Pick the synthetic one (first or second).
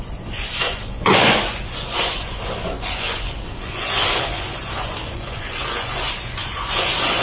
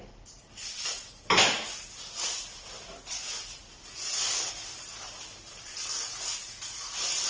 first